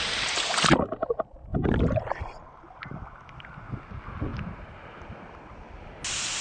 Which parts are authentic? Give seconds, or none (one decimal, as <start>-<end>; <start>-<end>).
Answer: 0.0-6.4